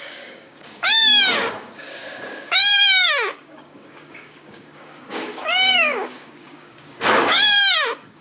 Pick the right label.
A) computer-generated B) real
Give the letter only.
A